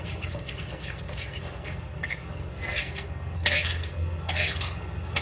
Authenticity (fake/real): fake